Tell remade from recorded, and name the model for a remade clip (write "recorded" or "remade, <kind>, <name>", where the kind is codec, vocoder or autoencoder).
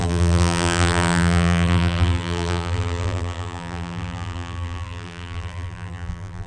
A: remade, vocoder, BigVGAN v2